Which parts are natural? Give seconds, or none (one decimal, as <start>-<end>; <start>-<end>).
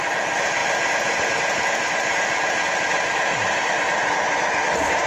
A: 0.0-5.1